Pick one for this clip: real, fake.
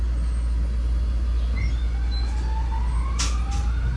real